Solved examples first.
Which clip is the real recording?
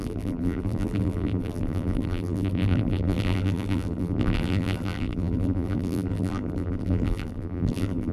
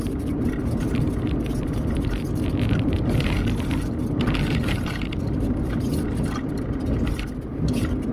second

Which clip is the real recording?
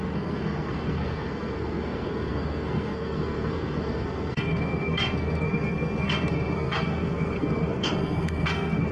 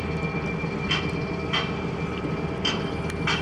second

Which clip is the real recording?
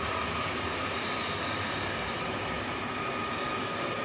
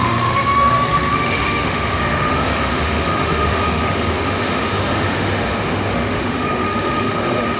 first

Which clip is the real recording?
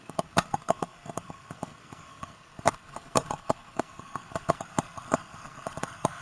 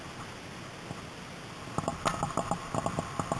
second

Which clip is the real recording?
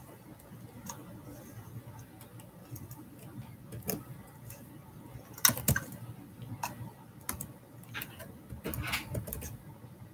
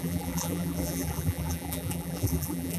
first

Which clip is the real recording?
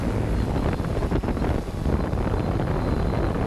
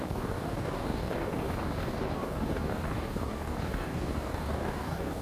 first